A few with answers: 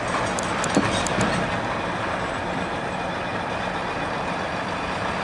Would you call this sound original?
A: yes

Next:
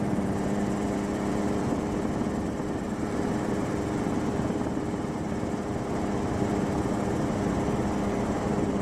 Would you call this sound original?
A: no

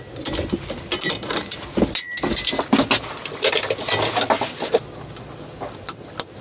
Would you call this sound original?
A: yes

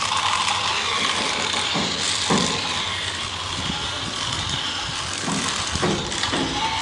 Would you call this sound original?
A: yes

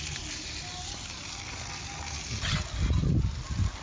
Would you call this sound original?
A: yes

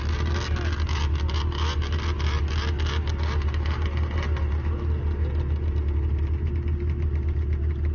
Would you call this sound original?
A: yes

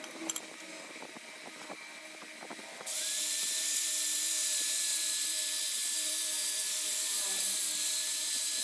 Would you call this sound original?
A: no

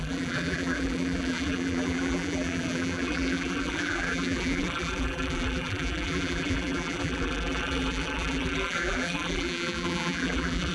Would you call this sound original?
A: no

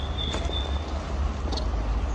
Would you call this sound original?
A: yes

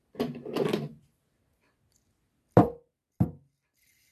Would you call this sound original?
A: yes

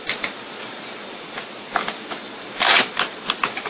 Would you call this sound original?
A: yes